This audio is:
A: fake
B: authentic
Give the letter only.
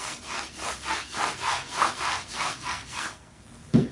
A